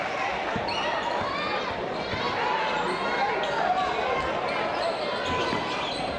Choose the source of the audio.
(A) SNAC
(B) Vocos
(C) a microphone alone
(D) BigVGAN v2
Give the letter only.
C